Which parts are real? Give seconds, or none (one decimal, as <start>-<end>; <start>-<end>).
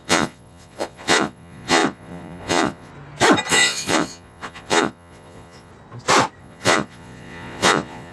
2.9-3.5; 5.7-6.4